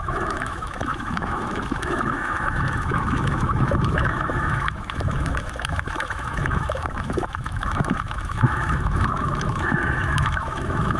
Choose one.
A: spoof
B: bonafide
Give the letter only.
A